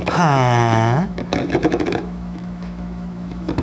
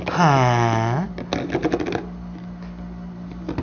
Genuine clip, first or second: second